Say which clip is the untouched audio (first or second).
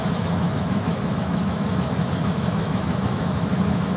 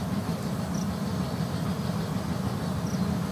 second